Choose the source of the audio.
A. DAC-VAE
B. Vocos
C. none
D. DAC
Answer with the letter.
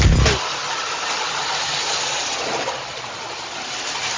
C